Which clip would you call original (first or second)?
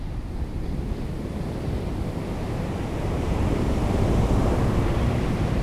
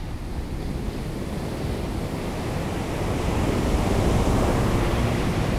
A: second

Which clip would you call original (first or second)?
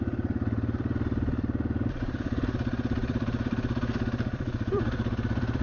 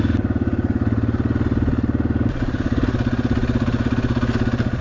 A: second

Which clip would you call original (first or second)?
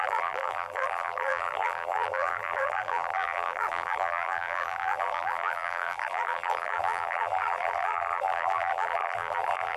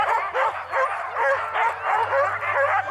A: second